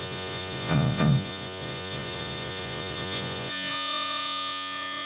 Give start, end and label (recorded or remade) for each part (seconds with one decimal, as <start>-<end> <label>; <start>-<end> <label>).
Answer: 0.0-5.1 remade